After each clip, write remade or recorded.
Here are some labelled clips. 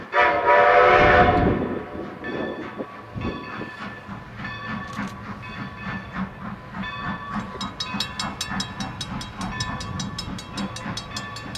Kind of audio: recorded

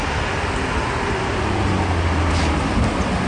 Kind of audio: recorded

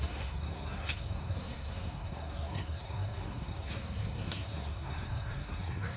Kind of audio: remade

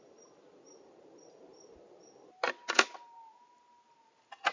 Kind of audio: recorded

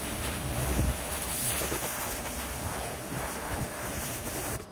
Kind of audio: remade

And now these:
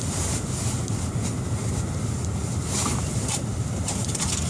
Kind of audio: recorded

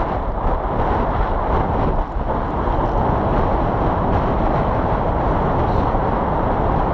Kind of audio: recorded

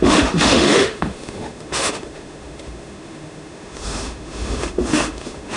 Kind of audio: remade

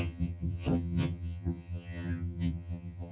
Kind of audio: remade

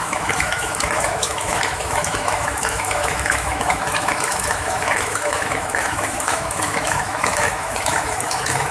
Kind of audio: remade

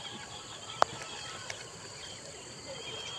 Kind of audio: remade